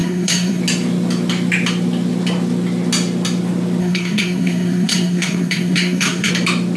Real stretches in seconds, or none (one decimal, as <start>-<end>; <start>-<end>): 0.6-3.8; 6.3-6.8